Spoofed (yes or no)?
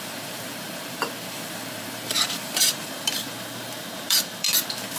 yes